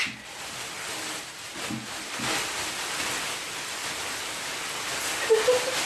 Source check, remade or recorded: remade